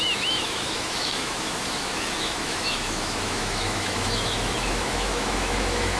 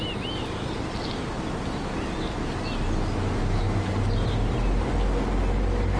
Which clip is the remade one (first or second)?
first